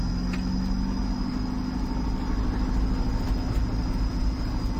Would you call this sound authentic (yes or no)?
yes